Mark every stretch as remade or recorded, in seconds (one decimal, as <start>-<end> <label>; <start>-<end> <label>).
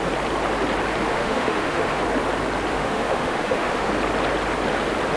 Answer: 0.0-1.1 recorded; 1.1-2.0 remade; 2.0-2.7 recorded; 2.7-3.9 remade; 3.9-5.2 recorded